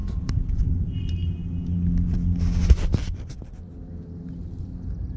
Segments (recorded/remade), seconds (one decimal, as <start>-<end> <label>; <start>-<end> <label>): 0.0-1.1 remade; 1.1-5.2 recorded